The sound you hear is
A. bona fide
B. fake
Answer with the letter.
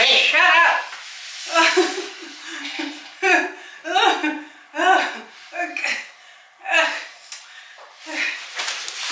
A